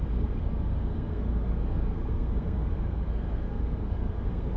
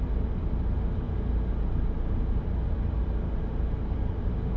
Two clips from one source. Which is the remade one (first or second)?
first